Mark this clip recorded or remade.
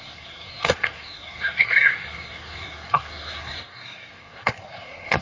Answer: remade